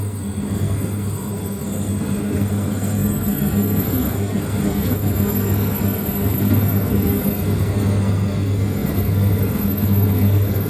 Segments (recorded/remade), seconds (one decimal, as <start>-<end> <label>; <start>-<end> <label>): 0.0-10.7 remade